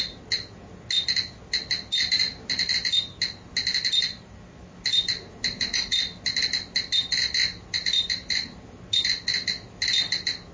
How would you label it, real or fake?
real